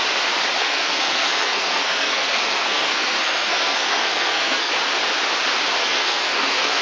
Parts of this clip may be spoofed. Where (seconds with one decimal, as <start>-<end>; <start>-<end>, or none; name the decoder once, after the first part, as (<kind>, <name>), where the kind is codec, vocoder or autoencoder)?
0.6-4.7 (codec, SNAC); 5.8-6.8